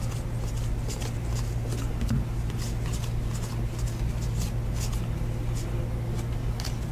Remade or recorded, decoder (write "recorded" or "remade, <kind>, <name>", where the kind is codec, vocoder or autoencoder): recorded